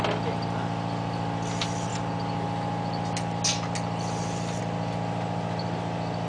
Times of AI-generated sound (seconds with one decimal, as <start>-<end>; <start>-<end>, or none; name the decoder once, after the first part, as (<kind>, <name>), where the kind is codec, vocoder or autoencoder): none